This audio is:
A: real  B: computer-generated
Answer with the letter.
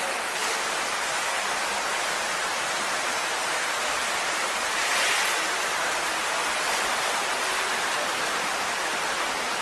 A